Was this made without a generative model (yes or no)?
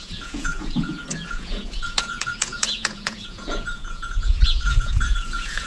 no